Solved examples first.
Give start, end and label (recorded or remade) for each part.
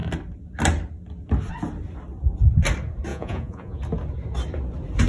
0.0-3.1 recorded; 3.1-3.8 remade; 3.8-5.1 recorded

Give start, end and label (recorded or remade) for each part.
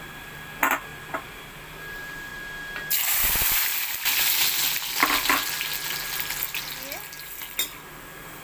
0.0-0.9 remade; 0.9-1.8 recorded; 1.8-2.3 remade; 2.3-3.3 recorded; 3.3-3.7 remade; 3.7-6.7 recorded; 6.7-8.4 remade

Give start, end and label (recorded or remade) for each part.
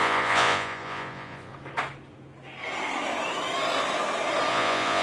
0.0-1.5 remade; 1.5-4.5 recorded; 4.5-5.0 remade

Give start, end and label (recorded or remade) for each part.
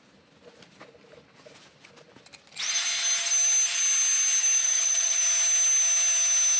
0.0-4.6 recorded; 4.6-5.2 remade; 5.2-6.6 recorded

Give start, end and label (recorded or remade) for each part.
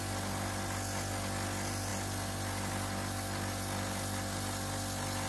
0.0-5.3 recorded